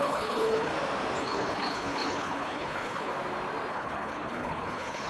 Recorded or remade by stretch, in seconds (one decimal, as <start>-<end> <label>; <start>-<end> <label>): 0.0-0.7 remade; 0.7-1.2 recorded; 1.2-3.1 remade; 3.1-3.7 recorded; 3.7-5.1 remade